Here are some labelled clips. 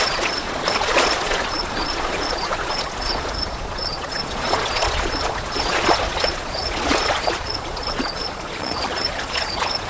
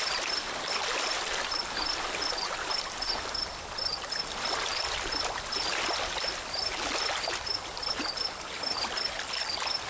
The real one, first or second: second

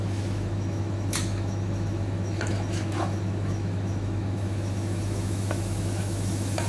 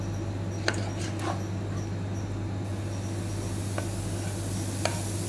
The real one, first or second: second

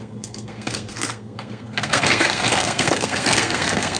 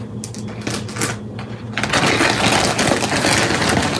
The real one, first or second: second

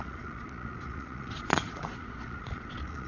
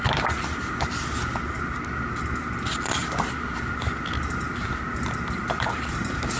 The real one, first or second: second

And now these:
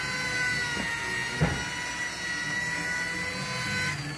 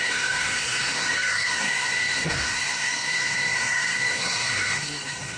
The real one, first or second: first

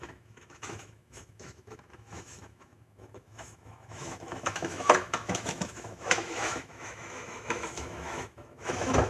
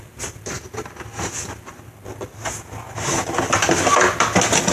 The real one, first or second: second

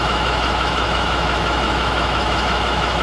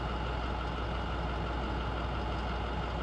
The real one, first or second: second